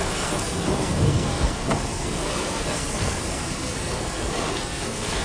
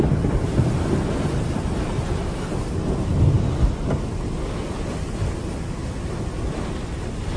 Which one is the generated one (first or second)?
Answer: first